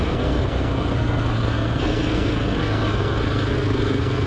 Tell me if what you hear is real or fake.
fake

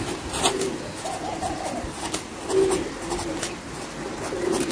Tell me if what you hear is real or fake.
real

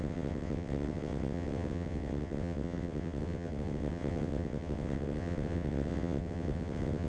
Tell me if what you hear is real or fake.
fake